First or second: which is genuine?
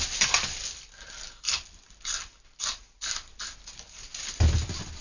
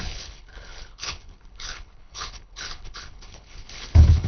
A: first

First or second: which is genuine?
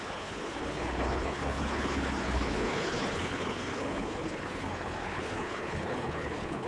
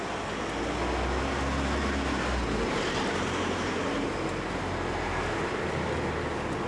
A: second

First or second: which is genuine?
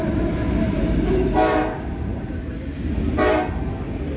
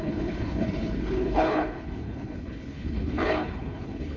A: first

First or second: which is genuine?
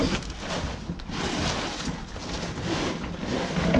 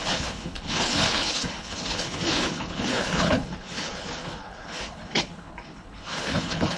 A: first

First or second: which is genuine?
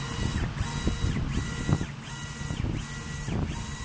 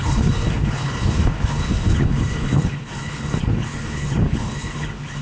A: first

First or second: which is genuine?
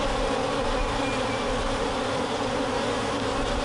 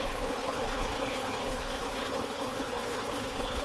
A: first